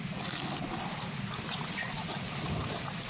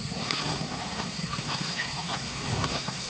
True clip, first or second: first